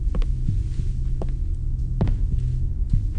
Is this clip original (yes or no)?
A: yes